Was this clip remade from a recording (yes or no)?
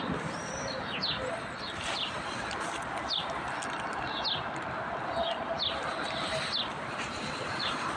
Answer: yes